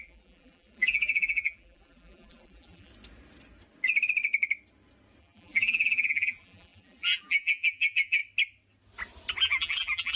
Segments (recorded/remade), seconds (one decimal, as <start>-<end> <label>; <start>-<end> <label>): 0.0-2.9 remade; 2.9-5.2 recorded; 5.2-8.2 remade; 8.2-9.4 recorded; 9.4-10.2 remade